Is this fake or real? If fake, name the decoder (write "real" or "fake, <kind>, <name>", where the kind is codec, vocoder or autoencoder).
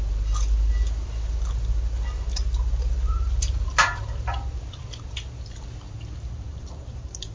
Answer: real